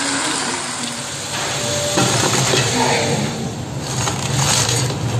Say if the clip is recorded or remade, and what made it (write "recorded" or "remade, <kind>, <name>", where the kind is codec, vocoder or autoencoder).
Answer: recorded